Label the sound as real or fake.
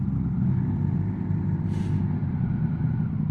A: real